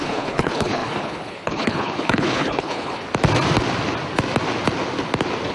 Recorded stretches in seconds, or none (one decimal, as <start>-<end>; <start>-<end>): 3.0-5.5